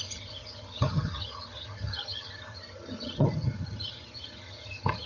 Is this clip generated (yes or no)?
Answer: yes